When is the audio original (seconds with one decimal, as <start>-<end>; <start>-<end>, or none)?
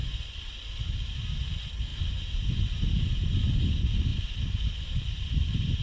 0.8-4.1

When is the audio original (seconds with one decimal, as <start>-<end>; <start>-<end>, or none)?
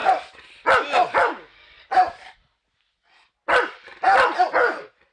0.0-5.1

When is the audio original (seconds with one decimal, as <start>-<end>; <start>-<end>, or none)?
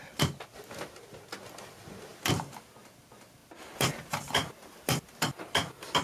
0.0-3.4; 5.4-6.0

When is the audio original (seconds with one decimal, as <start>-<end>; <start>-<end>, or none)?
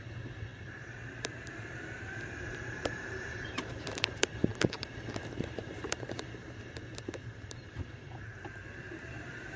none